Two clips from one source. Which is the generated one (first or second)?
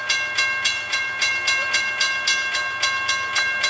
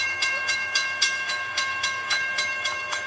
second